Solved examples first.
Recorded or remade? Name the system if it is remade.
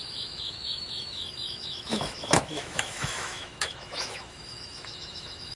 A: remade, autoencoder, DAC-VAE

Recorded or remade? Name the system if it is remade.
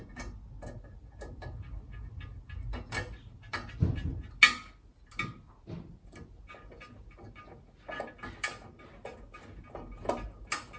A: recorded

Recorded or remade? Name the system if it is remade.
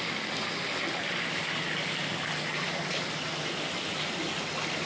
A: recorded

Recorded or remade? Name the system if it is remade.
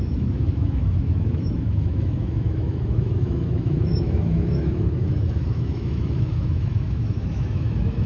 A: remade, autoencoder, DAC-VAE